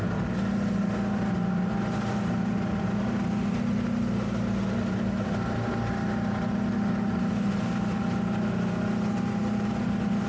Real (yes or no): yes